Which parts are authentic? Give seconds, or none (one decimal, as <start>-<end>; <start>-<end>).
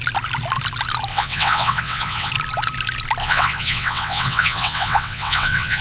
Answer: 0.0-1.1; 2.3-3.2